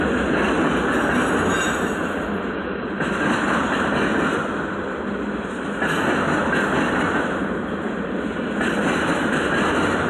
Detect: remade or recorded recorded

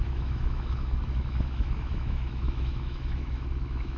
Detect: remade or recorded remade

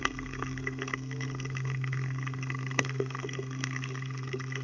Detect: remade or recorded remade